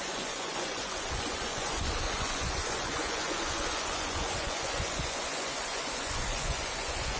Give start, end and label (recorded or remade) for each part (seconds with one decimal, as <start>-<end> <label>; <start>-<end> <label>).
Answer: 0.0-7.2 remade